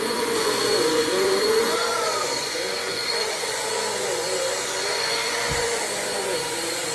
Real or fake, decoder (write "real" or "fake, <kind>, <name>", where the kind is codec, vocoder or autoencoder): fake, vocoder, Vocos